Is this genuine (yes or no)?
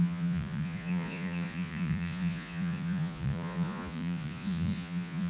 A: no